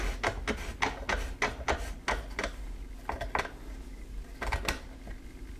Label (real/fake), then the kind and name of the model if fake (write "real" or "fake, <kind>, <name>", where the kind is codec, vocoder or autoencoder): real